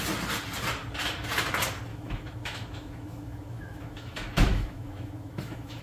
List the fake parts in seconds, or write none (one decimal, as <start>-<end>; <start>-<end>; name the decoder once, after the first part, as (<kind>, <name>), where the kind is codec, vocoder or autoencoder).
1.9-5.8 (autoencoder, DAC-VAE)